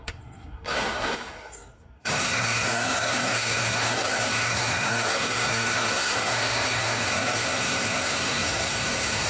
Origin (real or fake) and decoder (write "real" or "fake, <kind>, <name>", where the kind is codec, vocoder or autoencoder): fake, codec, SNAC